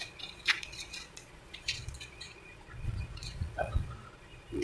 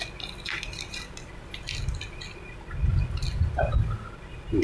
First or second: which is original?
second